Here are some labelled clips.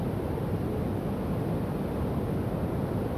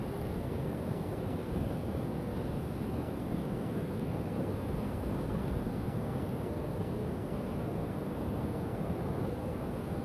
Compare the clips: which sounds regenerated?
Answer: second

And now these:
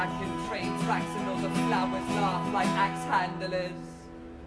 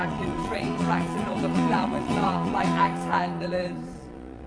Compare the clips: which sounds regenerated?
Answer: second